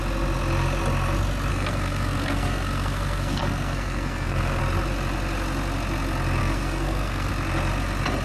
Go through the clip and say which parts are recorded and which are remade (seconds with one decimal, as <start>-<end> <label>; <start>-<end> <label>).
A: 0.0-1.5 recorded; 1.5-4.6 remade; 4.6-6.4 recorded; 6.4-7.3 remade; 7.3-8.2 recorded